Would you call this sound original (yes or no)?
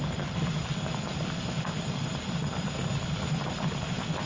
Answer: yes